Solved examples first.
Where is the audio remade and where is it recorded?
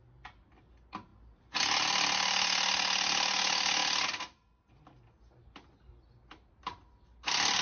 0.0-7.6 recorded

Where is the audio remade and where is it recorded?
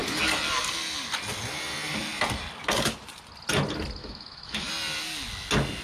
0.0-4.0 recorded; 4.0-4.7 remade; 4.7-5.8 recorded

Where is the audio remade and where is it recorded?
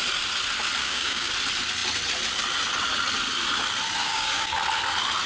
0.0-0.8 recorded; 0.8-1.3 remade; 1.3-4.0 recorded; 4.0-4.6 remade; 4.6-5.3 recorded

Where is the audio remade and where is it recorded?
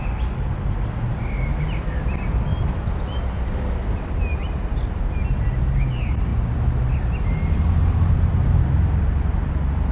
0.0-9.9 recorded